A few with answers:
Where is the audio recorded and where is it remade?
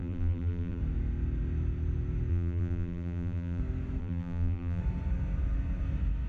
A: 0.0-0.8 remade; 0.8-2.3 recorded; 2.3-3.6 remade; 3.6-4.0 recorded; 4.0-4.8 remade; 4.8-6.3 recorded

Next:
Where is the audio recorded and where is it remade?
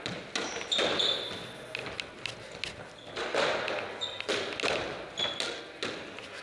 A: 0.0-6.4 recorded